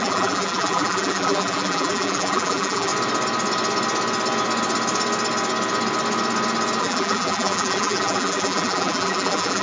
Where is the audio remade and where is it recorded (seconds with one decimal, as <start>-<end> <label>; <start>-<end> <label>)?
0.0-2.9 remade; 2.9-6.8 recorded; 6.8-9.6 remade